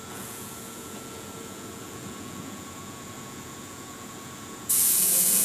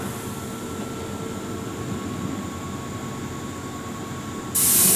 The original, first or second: second